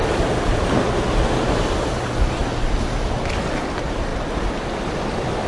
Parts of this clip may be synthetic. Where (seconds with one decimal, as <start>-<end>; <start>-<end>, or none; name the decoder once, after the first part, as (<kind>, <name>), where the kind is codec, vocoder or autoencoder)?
none